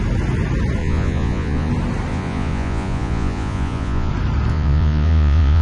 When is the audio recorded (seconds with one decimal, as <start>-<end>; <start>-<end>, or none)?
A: 0.0-0.8; 1.7-2.1; 4.1-4.5